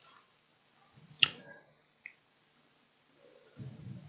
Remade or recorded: recorded